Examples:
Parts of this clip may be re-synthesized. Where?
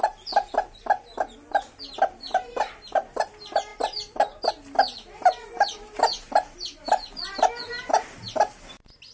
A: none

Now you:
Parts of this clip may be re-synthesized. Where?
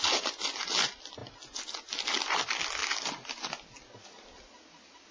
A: none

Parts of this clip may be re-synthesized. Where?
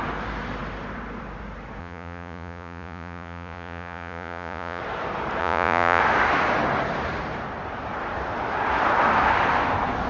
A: 1.8-4.8; 5.4-6.0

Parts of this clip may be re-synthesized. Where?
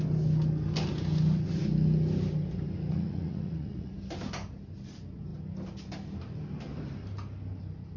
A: 2.9-3.9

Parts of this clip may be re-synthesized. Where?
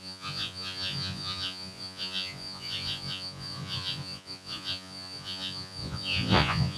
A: 0.0-6.8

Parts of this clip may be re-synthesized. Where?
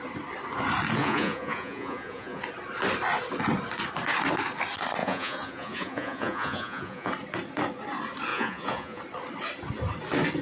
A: 1.0-2.4; 5.0-7.1; 8.3-9.0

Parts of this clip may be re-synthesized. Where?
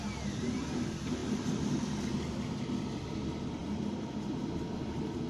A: none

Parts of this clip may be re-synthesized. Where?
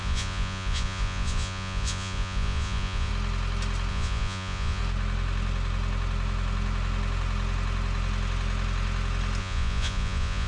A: 0.0-3.1; 3.9-4.8; 9.4-10.5